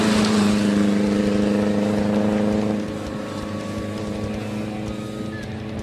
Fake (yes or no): no